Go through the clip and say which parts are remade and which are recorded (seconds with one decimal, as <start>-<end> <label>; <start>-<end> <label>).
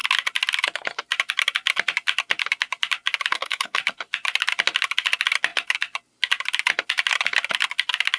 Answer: 0.0-3.3 recorded; 3.3-3.8 remade; 3.8-8.2 recorded